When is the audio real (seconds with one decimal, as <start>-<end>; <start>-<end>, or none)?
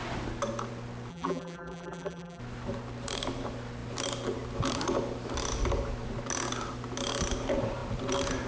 0.0-1.1; 2.4-8.5